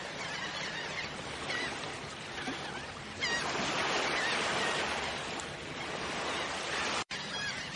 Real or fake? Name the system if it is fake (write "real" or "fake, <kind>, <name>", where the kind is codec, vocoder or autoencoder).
fake, vocoder, BigVGAN v2